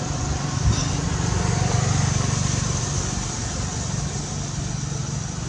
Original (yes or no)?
yes